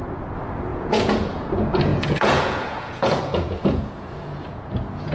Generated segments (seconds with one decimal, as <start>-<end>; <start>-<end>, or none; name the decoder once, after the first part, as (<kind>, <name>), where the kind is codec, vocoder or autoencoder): 0.7-1.5 (vocoder, Vocos); 1.9-5.1